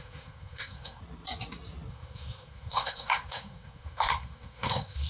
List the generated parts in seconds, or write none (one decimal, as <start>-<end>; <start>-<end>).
0.0-1.0; 1.9-5.1